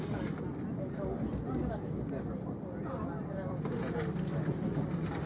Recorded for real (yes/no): yes